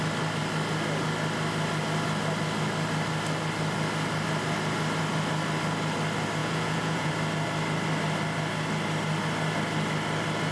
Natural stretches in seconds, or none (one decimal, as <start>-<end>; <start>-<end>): 0.0-6.4; 7.1-10.5